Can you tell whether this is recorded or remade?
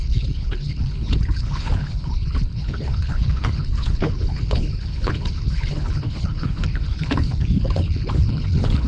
remade